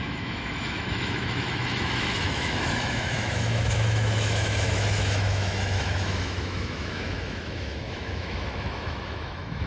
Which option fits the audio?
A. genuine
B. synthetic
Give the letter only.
B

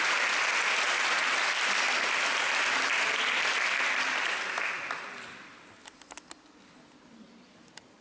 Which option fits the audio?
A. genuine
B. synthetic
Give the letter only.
A